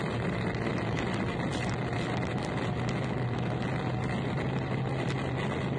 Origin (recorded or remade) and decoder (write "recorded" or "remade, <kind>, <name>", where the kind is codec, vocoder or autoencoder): recorded